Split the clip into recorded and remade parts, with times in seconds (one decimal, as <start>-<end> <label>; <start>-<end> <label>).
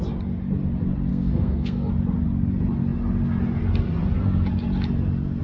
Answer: 0.0-1.1 recorded; 1.1-1.9 remade; 1.9-5.4 recorded